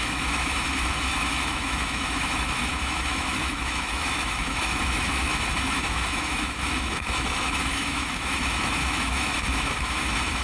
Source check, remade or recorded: remade